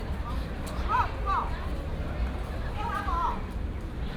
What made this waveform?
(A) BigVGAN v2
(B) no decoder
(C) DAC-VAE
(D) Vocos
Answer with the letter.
B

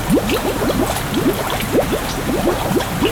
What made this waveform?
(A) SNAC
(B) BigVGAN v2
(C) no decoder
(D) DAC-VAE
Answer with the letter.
C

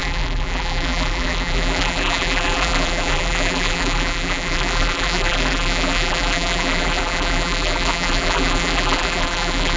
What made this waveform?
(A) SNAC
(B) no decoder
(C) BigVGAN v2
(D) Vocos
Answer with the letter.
C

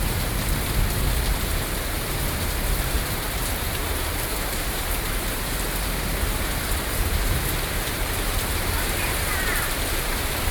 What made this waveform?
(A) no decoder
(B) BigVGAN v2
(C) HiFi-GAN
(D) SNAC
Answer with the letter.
B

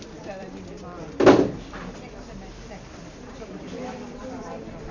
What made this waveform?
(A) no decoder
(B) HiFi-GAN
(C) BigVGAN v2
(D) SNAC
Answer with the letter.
C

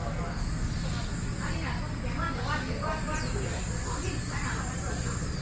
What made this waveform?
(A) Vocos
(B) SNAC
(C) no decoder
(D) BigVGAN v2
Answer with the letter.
C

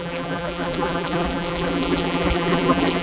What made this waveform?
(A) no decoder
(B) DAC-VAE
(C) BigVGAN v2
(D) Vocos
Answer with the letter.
C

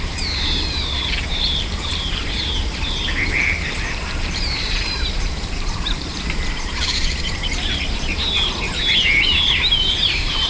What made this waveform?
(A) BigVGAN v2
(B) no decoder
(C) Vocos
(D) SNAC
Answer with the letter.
A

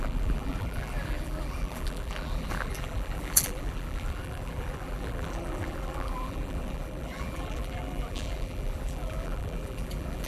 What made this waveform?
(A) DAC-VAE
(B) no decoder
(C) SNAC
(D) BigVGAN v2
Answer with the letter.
D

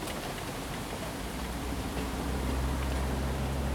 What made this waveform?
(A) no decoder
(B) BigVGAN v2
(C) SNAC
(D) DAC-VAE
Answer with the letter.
B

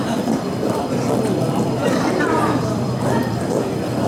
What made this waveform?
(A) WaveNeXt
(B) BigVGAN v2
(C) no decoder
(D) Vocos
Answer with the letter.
B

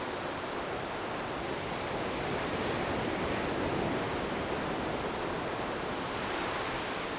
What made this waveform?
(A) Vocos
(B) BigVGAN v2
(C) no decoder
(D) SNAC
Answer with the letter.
C